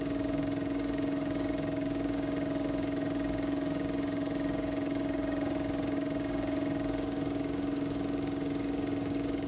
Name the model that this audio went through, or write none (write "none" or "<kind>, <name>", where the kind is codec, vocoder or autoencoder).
codec, DAC